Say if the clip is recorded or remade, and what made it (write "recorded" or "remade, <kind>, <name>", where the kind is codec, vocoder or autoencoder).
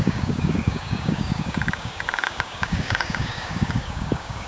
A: remade, codec, DAC